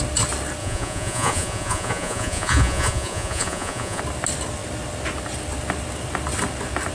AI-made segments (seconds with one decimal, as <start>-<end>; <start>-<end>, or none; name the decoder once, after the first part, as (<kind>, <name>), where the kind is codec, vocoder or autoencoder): 0.6-4.0 (vocoder, Vocos)